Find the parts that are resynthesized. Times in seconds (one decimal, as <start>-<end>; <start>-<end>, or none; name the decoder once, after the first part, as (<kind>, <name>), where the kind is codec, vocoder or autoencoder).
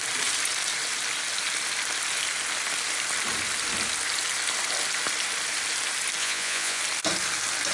6.2-6.8 (vocoder, Vocos)